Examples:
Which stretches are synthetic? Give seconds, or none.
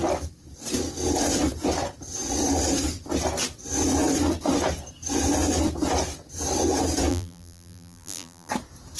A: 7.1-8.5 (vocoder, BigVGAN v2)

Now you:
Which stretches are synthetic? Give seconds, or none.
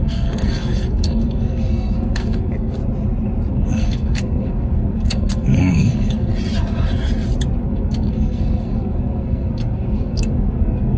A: 0.0-2.8 (codec, SNAC); 3.5-6.3; 7.6-11.0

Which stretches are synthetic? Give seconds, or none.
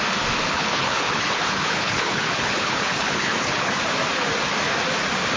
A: 0.5-3.7 (codec, HILCodec)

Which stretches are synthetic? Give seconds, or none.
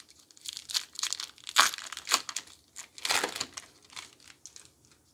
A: none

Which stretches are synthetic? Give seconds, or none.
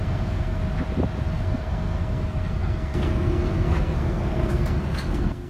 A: 0.0-0.6 (codec, SNAC); 1.3-5.5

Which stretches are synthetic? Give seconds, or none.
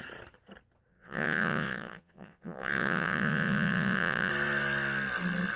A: 0.9-4.3 (vocoder, Vocos)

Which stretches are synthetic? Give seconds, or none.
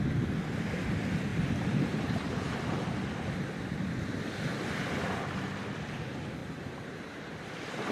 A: 1.3-2.4 (vocoder, BigVGAN v2); 6.4-7.2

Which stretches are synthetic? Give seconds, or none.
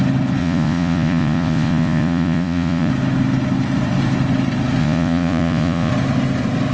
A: 0.4-2.9 (vocoder, Vocos); 4.8-5.9